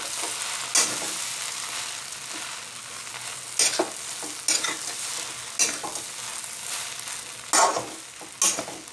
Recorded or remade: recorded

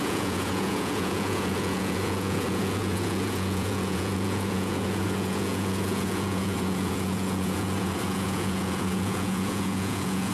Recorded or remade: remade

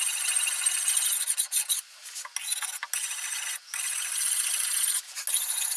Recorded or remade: recorded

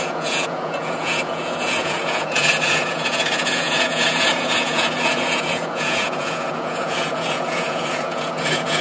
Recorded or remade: remade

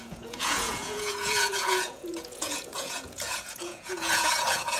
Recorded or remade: remade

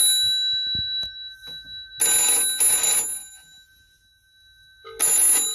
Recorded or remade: recorded